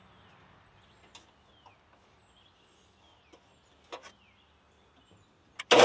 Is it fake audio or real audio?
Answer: real